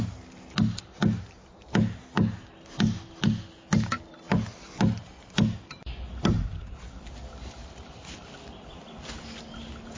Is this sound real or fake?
real